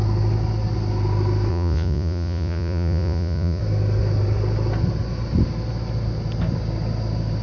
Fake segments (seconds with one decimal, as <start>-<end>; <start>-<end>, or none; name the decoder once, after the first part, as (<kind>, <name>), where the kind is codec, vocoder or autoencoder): 1.5-3.6 (vocoder, Vocos)

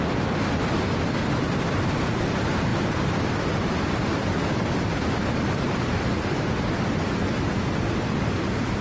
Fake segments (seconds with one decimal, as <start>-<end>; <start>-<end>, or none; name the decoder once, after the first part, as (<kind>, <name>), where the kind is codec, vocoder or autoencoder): 2.7-6.6 (vocoder, BigVGAN v2)

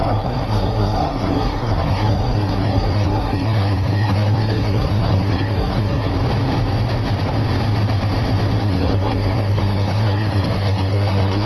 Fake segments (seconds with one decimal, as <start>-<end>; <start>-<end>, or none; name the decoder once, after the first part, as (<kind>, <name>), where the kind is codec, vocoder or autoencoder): 0.0-6.1 (codec, SNAC); 8.6-11.5